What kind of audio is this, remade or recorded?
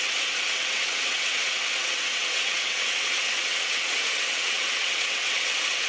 remade